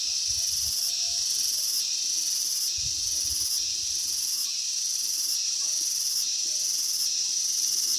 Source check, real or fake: fake